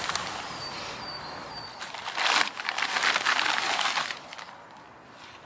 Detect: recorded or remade remade